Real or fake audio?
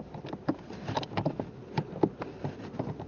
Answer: fake